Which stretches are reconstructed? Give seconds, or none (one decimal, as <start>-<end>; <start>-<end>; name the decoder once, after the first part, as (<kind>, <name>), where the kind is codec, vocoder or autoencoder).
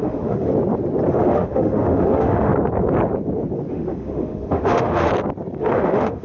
0.0-0.5 (autoencoder, DAC-VAE); 1.1-2.5; 3.7-5.1; 5.6-6.2